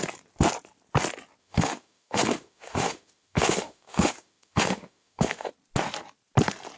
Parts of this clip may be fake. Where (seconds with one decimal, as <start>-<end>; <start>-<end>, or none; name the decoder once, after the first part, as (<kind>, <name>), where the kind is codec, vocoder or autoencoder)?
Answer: 1.4-5.5 (autoencoder, DAC-VAE)